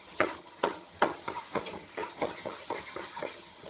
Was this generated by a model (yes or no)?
yes